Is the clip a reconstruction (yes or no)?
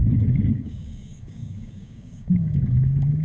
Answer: yes